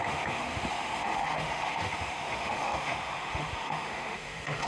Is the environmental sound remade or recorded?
remade